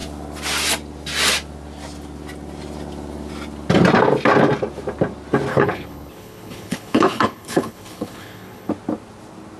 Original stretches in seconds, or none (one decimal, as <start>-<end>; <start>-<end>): 0.0-5.5; 8.7-9.6